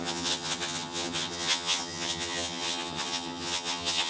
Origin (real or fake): fake